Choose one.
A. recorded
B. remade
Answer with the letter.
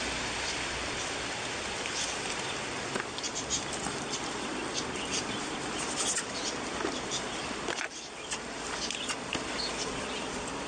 A